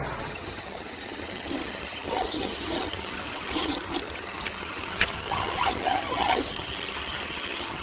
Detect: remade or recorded remade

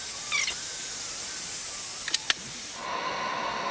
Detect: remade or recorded recorded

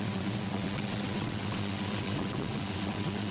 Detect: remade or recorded remade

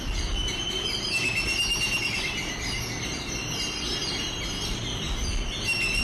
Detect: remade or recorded recorded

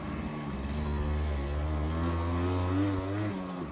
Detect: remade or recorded recorded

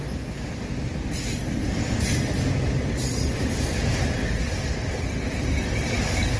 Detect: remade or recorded recorded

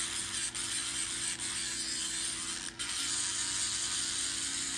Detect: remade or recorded recorded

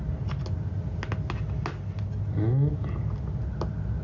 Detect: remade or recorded recorded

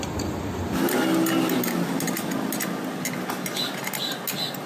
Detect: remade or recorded recorded